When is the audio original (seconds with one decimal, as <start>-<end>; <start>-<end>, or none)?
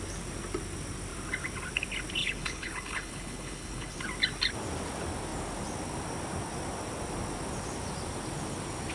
0.0-2.2; 4.0-8.9